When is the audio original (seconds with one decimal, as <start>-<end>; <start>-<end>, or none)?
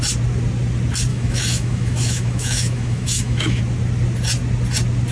0.0-1.1; 3.6-5.1